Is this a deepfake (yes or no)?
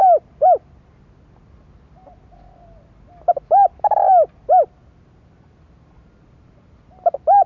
no